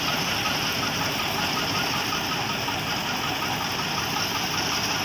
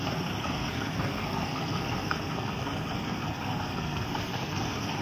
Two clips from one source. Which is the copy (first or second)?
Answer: second